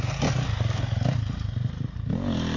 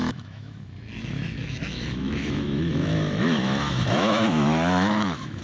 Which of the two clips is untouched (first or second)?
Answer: first